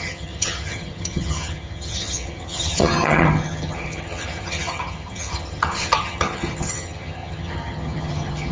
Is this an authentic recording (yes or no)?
no